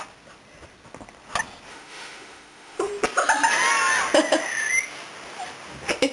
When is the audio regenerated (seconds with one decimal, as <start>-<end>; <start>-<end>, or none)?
1.7-2.9